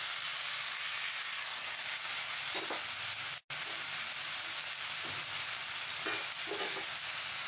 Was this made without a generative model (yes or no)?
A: yes